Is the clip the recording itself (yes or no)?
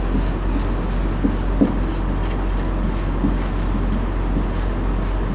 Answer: yes